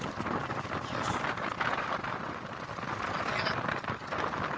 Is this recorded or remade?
recorded